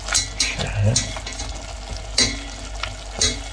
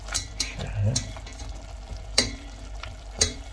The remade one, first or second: second